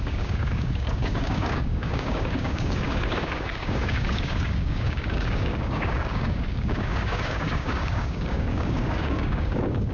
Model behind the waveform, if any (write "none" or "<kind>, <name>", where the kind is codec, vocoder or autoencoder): codec, DAC